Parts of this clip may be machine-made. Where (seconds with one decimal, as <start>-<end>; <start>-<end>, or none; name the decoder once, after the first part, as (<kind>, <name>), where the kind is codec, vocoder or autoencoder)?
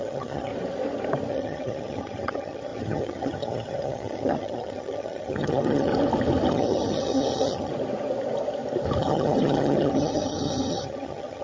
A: 0.0-0.5 (vocoder, HiFi-GAN); 1.3-5.9; 6.5-7.7; 9.0-11.4